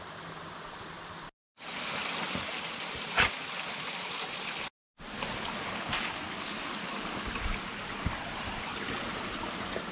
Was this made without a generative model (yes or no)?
yes